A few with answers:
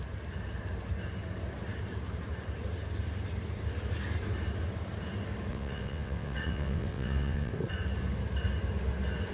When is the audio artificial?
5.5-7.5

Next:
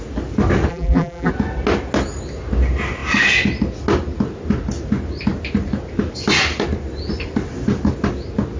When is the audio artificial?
0.7-1.3

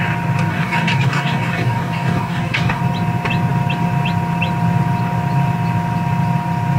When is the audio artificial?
0.5-2.8

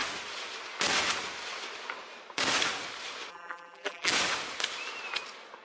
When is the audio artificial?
3.3-4.1

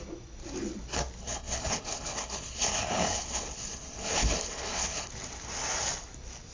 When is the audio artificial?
1.2-5.1